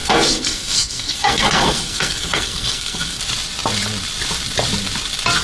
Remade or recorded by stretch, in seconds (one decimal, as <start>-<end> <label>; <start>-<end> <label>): 0.0-3.2 remade; 3.2-5.4 recorded